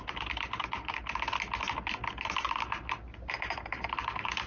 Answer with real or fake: real